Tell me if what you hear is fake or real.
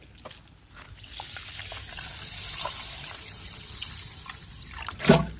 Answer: real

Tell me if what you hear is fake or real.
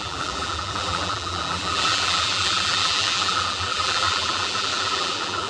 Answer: fake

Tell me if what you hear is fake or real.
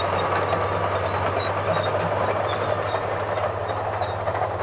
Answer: real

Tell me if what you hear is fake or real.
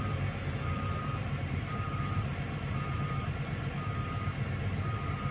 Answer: fake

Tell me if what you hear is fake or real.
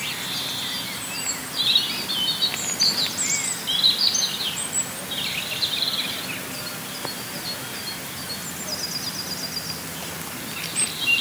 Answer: real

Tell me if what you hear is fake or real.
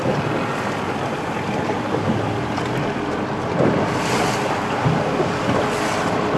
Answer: real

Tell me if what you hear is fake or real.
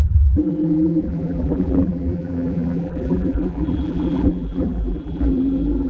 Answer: fake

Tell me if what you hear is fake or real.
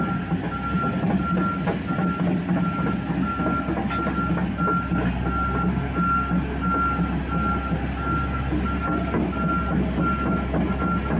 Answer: real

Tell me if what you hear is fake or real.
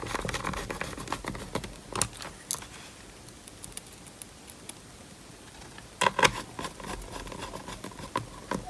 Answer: real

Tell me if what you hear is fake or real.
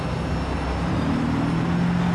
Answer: real